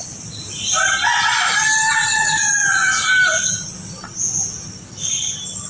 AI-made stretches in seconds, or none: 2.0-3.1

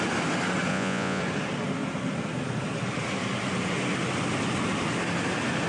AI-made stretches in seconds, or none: 0.7-1.2

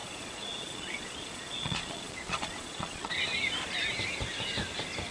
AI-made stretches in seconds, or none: 0.0-3.1